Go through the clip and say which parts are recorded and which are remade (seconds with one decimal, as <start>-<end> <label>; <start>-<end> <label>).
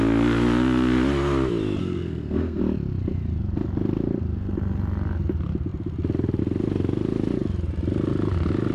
0.0-1.8 recorded; 1.8-2.6 remade; 2.6-8.7 recorded